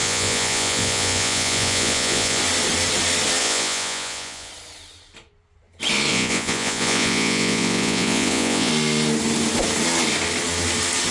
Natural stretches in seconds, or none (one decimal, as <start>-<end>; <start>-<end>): 2.4-3.4; 4.5-6.1; 8.7-11.1